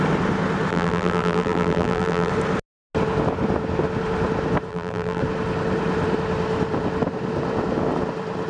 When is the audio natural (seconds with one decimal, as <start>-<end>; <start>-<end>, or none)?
0.0-0.7; 2.3-4.7; 5.2-8.5